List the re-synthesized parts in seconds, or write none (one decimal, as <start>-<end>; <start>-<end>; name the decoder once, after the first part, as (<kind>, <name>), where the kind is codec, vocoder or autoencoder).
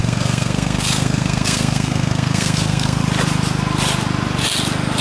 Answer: 0.0-3.0 (codec, SNAC)